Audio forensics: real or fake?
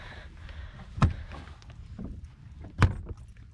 real